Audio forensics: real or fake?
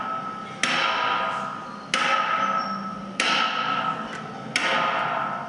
real